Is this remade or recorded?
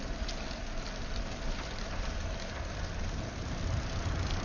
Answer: recorded